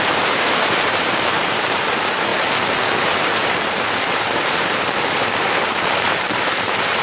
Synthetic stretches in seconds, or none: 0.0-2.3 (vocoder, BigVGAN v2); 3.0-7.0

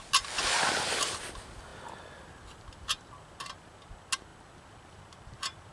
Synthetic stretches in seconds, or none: none

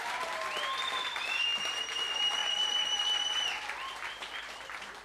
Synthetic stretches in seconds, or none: none